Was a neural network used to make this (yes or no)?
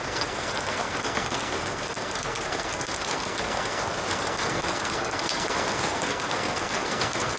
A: yes